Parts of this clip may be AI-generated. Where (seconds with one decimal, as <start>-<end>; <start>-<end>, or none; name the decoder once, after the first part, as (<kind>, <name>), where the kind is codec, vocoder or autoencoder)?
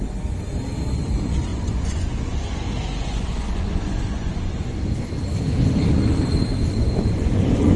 1.5-4.9 (vocoder, Vocos); 6.8-7.8